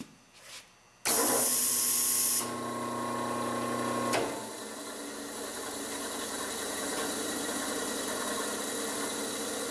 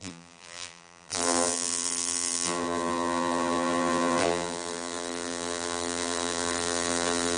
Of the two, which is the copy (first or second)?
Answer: second